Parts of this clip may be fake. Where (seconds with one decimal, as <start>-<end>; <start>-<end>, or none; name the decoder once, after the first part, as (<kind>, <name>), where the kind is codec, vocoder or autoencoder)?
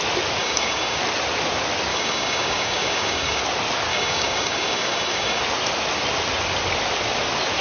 0.4-1.0 (codec, DAC); 1.9-3.4; 3.9-5.4